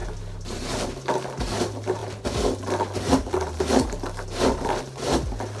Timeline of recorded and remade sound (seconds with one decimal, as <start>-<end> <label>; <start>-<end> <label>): 0.0-5.6 recorded

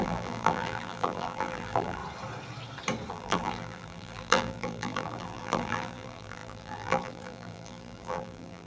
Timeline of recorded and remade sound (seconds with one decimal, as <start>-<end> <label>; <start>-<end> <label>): 0.0-2.0 remade; 2.0-3.1 recorded; 3.1-8.7 remade

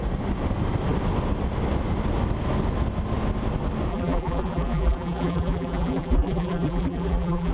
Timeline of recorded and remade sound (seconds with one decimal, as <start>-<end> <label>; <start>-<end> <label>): 0.0-3.9 recorded; 3.9-7.5 remade